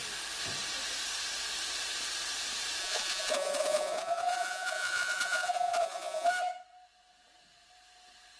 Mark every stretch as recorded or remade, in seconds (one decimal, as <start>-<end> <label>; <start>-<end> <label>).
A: 0.0-2.8 recorded; 2.8-6.3 remade; 6.3-8.4 recorded